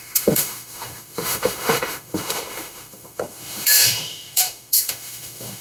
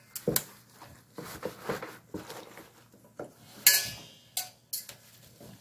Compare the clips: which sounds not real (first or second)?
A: first